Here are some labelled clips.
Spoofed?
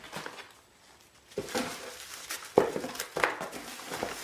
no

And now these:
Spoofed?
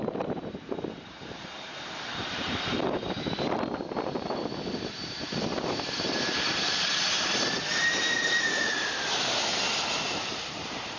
yes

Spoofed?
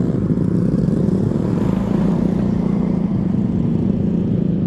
no